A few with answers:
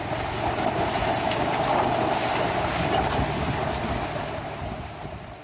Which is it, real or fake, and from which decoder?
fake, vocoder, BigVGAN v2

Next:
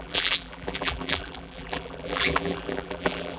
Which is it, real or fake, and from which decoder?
fake, vocoder, BigVGAN v2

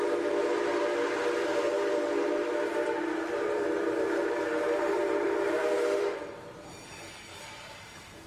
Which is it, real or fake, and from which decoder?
fake, vocoder, BigVGAN v2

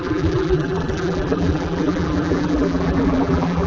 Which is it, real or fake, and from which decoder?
fake, vocoder, BigVGAN v2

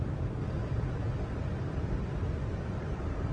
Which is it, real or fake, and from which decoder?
fake, vocoder, BigVGAN v2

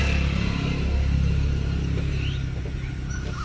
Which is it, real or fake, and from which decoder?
real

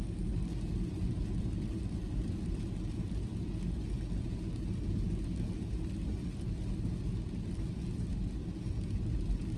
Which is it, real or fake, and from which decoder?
real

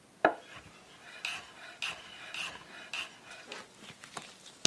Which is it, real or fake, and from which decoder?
real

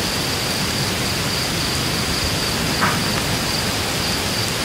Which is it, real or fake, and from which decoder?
real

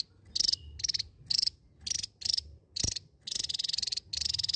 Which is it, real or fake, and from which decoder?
real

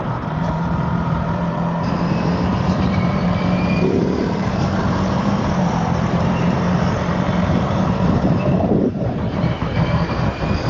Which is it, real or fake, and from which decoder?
fake, vocoder, BigVGAN v2